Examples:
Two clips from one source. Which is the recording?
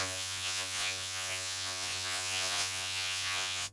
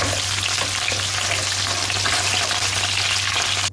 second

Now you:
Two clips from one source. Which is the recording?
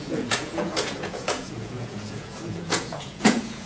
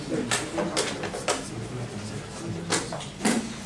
second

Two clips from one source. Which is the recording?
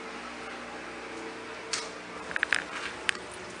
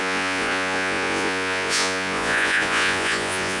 first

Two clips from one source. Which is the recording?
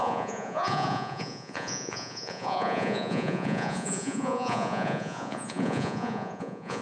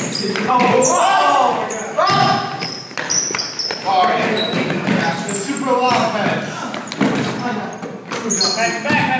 second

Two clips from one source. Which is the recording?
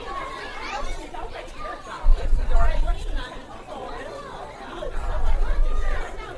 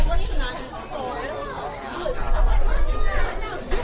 second